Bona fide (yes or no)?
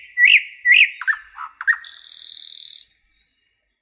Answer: yes